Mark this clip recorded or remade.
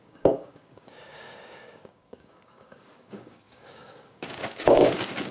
remade